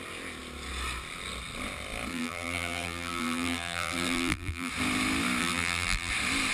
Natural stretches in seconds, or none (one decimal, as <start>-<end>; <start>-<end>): 0.0-2.1; 4.7-5.4; 6.1-6.5